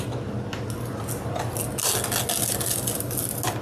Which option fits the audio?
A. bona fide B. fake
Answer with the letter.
A